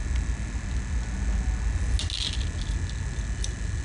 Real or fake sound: real